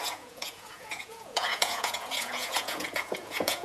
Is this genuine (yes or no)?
no